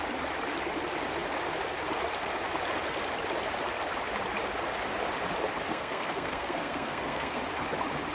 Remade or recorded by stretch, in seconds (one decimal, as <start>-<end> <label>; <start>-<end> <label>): 0.0-5.7 recorded; 5.7-7.4 remade; 7.4-8.1 recorded